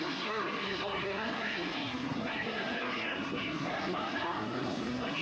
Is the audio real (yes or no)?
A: no